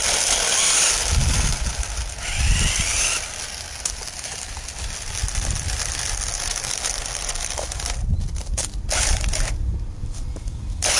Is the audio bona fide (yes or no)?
yes